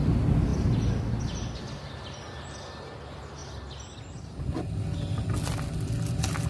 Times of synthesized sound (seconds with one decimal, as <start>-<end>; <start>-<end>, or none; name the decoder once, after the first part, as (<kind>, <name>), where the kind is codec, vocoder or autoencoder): none